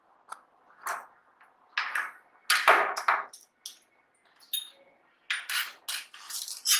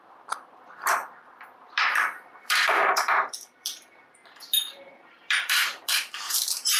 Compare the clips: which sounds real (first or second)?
first